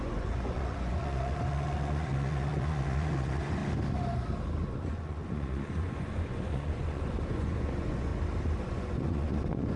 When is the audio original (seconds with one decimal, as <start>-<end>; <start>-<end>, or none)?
3.6-4.7; 8.1-8.6